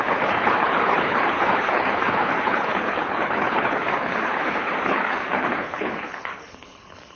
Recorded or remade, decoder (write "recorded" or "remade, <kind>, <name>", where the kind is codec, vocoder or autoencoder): remade, codec, HILCodec